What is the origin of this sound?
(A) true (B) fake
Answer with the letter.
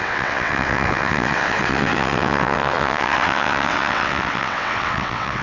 B